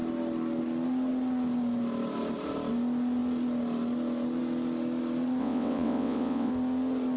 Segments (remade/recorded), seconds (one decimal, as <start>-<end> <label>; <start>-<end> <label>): 0.0-5.4 recorded; 5.4-6.5 remade; 6.5-7.2 recorded